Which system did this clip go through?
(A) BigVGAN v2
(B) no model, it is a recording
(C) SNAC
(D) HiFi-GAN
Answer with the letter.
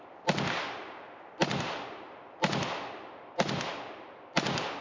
B